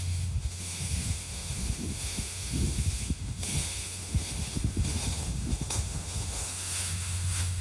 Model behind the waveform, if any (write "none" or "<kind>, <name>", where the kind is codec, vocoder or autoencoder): autoencoder, DAC-VAE